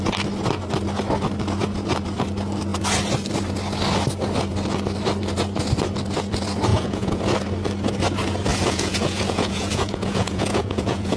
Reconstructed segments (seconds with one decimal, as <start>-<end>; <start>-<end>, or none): 6.7-7.2; 8.5-11.2